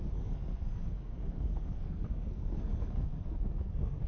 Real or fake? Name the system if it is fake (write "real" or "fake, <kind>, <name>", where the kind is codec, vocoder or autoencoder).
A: fake, codec, SNAC